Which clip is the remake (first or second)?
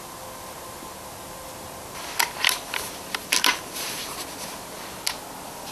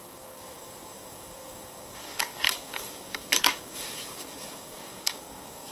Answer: second